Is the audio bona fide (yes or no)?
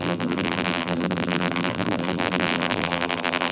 no